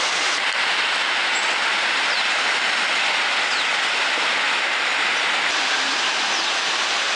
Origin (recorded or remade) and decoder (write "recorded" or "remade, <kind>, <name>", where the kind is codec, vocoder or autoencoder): recorded